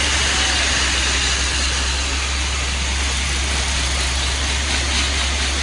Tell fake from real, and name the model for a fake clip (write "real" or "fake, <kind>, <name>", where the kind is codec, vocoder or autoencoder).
real